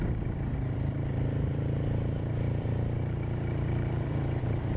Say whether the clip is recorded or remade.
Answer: remade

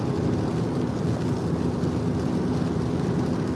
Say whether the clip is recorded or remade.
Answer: recorded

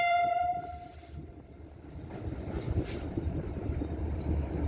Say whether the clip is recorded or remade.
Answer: remade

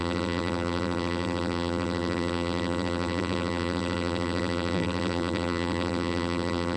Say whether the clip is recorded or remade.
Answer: remade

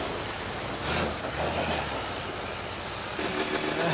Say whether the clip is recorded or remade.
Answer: recorded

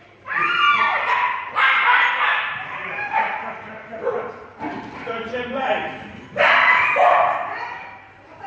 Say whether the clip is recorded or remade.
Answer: remade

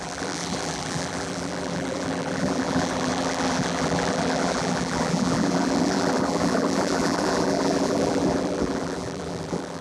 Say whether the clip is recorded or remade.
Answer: remade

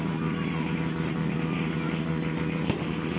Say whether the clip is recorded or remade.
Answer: recorded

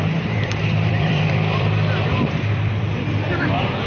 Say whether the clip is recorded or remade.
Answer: remade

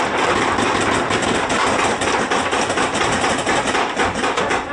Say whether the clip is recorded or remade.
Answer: recorded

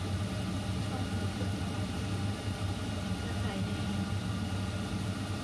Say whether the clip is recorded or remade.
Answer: recorded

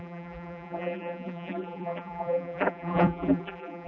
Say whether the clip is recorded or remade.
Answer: remade